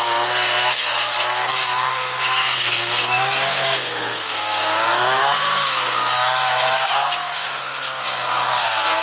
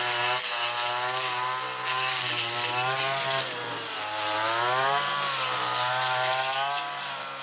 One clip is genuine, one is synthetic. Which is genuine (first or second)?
second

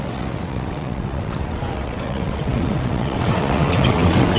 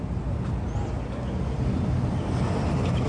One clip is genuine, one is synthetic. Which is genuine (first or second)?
second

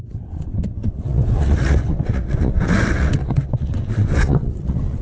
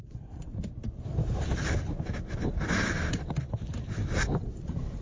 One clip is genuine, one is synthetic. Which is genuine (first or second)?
second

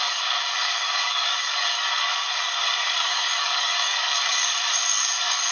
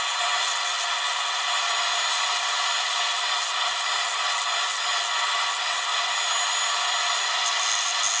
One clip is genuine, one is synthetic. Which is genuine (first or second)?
second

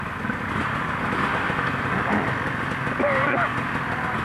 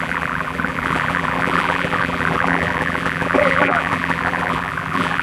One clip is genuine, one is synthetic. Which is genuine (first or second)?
first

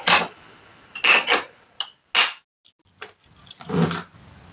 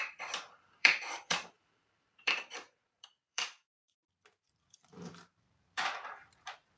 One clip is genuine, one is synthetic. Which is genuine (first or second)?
first